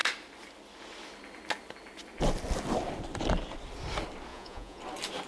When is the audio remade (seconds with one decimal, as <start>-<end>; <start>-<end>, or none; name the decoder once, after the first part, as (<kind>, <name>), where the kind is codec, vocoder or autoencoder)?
4.3-4.8 (vocoder, Vocos)